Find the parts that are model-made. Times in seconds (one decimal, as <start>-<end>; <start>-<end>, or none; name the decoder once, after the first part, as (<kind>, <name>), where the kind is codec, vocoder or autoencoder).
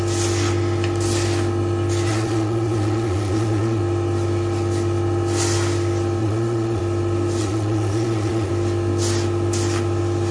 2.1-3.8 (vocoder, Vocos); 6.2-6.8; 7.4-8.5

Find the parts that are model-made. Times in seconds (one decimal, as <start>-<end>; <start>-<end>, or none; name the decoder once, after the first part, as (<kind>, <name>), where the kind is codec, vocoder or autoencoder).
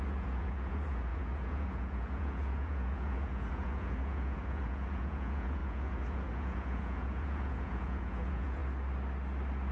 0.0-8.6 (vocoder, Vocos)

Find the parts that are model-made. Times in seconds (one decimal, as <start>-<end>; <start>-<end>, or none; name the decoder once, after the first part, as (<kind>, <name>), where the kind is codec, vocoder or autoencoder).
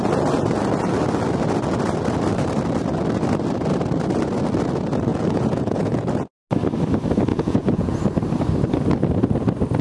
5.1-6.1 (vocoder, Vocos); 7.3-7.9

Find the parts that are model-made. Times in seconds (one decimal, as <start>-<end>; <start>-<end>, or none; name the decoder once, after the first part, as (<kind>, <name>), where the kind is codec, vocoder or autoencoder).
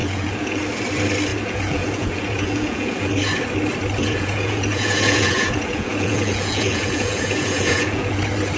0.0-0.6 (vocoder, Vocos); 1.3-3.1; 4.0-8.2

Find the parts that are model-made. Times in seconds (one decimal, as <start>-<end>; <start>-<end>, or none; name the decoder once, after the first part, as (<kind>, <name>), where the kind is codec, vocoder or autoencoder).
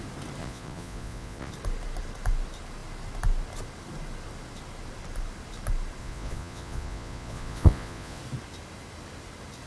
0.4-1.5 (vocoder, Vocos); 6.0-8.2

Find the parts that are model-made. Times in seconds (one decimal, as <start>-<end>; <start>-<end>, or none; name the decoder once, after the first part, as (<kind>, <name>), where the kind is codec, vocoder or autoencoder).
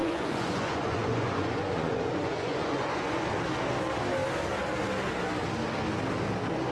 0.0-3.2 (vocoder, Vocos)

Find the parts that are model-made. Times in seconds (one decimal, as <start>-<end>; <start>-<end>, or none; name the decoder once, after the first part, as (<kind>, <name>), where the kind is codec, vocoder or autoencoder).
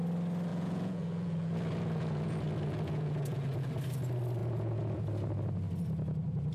0.5-3.7 (vocoder, Vocos); 4.4-5.0